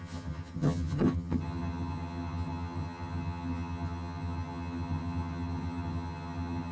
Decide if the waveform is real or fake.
fake